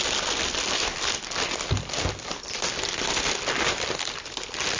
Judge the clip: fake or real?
real